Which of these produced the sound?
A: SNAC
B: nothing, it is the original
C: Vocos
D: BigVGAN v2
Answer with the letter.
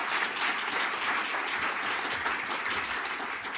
B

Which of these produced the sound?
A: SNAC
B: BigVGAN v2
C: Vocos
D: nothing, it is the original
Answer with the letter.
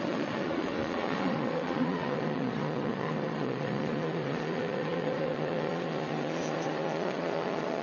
C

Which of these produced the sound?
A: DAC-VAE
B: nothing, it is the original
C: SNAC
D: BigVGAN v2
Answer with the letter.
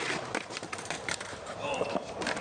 D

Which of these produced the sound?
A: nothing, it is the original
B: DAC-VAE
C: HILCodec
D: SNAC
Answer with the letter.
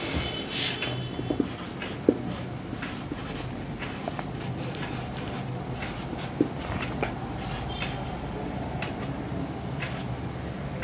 A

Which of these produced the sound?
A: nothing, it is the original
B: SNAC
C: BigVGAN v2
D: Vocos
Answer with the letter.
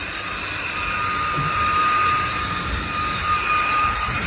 C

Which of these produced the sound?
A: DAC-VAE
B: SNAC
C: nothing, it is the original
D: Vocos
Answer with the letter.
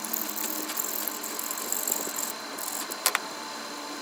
C